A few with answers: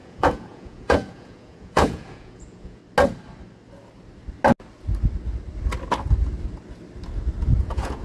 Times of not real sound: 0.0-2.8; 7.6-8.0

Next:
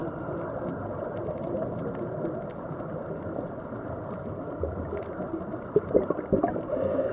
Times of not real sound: none